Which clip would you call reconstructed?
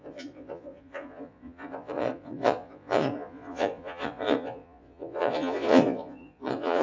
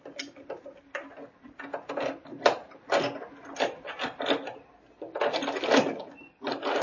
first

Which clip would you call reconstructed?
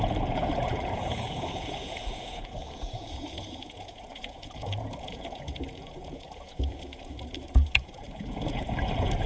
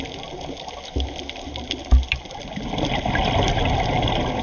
first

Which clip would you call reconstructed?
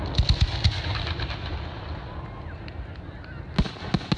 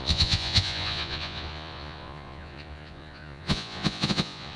second